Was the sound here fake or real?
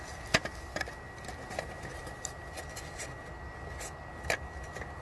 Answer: real